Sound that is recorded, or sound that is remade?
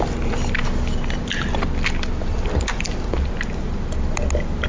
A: recorded